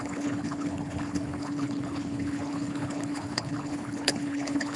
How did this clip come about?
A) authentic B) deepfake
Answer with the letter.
B